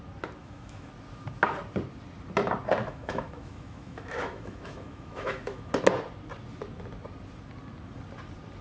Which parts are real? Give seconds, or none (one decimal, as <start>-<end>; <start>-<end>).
0.0-0.4; 0.9-2.8; 5.7-8.6